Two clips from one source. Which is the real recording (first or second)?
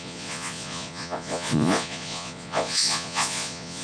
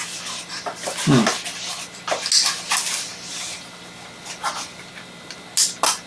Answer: second